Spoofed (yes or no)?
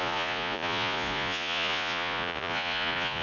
yes